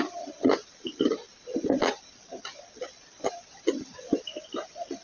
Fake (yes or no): yes